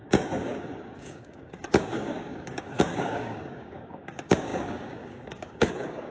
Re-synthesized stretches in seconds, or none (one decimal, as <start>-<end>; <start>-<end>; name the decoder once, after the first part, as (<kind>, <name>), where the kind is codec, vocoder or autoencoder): 0.0-6.1 (codec, DAC)